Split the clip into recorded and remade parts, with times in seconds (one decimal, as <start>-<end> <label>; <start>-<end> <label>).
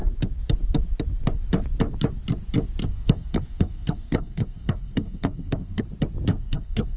0.0-2.8 recorded; 2.8-5.8 remade; 5.8-6.3 recorded; 6.3-7.0 remade